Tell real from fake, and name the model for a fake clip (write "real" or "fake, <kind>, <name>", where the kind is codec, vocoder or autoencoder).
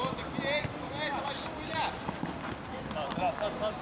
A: real